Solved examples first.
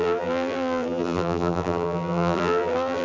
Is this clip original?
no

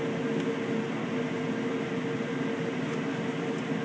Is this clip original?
yes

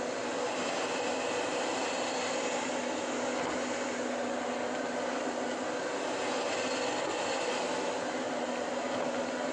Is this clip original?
yes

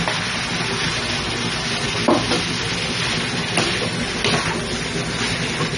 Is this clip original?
yes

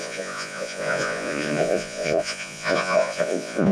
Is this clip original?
no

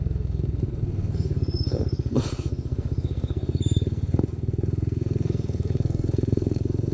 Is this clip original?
no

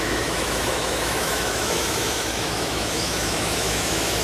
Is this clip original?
no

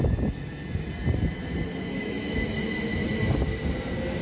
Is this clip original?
yes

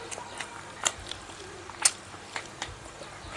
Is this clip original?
yes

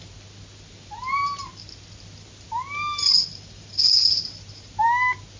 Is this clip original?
yes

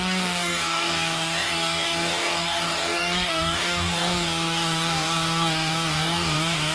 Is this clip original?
no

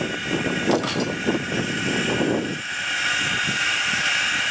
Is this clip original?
yes